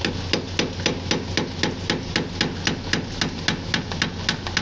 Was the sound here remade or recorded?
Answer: recorded